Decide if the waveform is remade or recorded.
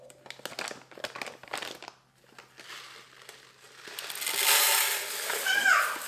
recorded